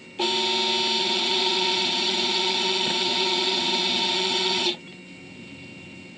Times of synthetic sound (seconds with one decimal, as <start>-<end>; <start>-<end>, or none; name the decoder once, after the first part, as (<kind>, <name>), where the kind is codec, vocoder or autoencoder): 1.0-4.7 (vocoder, Vocos)